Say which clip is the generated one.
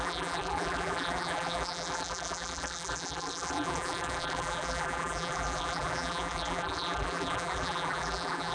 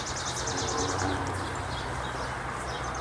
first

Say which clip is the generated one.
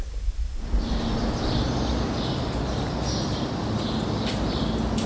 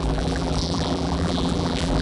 second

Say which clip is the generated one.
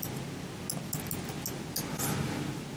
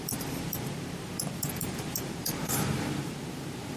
second